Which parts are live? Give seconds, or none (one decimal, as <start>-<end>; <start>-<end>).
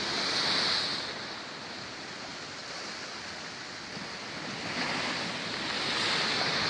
0.0-6.7